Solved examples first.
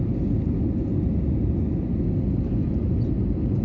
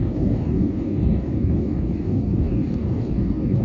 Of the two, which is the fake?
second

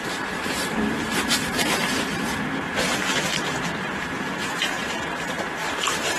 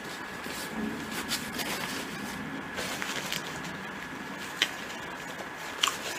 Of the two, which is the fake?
first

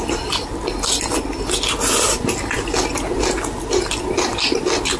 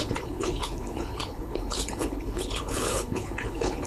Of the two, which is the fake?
second